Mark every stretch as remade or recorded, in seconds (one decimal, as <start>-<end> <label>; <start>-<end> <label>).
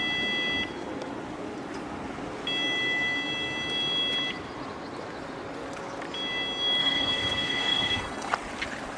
0.0-6.8 recorded; 6.8-8.3 remade; 8.3-9.0 recorded